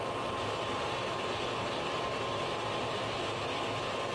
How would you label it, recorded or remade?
recorded